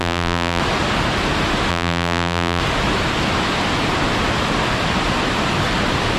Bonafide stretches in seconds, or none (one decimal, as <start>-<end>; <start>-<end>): 0.6-1.7; 2.6-6.2

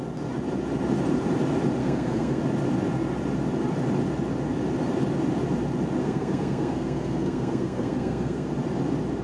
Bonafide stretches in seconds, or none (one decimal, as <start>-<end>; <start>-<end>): 0.0-1.8; 2.4-6.0; 8.5-9.2